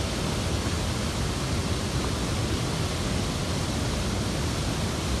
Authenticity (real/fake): real